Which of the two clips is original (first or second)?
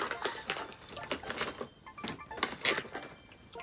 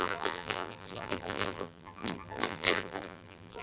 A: first